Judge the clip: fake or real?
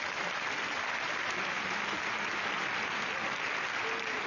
real